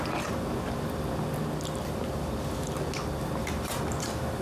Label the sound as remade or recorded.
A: recorded